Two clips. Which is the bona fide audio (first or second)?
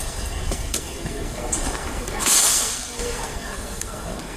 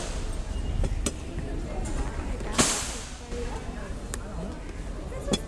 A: second